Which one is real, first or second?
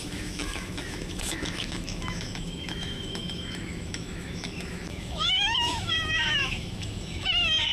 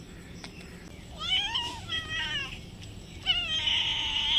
second